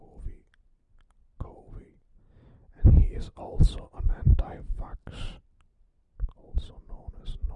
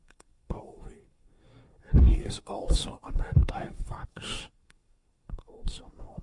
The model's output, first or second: second